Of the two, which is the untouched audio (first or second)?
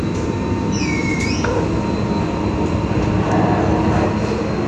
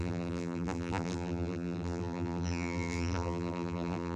first